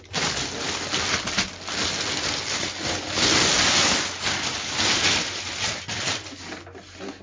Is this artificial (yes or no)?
no